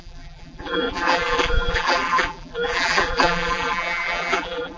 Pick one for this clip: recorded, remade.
remade